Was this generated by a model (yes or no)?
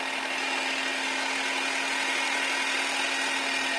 no